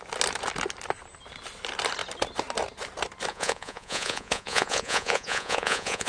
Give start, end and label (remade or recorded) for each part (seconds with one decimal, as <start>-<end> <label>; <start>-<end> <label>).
0.0-3.3 recorded; 3.3-6.1 remade